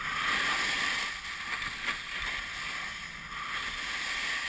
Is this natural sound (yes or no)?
yes